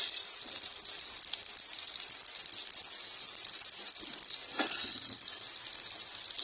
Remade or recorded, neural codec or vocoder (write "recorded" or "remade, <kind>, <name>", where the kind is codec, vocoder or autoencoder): recorded